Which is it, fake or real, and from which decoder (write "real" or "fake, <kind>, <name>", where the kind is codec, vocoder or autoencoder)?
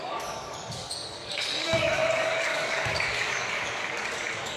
fake, codec, DAC